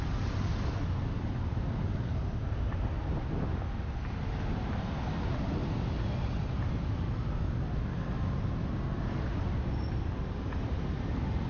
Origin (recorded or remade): recorded